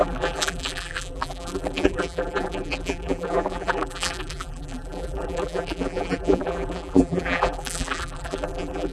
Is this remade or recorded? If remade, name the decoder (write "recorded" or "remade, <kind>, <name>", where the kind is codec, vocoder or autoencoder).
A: remade, vocoder, BigVGAN v2